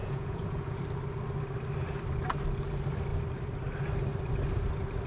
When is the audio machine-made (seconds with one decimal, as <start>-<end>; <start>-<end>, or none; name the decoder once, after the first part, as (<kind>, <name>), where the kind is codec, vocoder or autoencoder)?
0.0-0.8 (vocoder, Vocos)